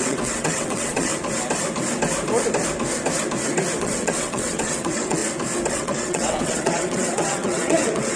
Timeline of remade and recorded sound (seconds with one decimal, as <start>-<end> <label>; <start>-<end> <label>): 0.0-1.1 remade; 1.1-3.8 recorded; 3.8-5.2 remade; 5.2-5.7 recorded; 5.7-8.2 remade